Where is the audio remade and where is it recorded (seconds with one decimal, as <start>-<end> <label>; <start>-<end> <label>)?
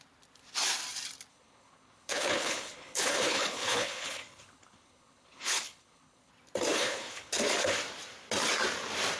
0.0-1.3 recorded; 1.3-6.3 remade; 6.3-6.7 recorded; 6.7-7.3 remade; 7.3-9.2 recorded